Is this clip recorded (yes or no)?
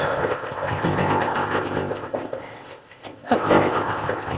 no